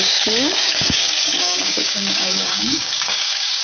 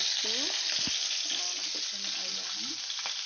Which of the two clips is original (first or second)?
second